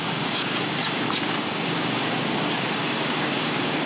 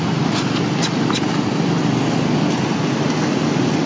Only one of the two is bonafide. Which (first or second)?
second